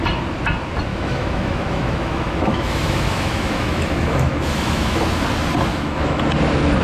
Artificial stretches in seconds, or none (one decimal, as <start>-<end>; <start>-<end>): 0.9-5.0; 5.7-6.2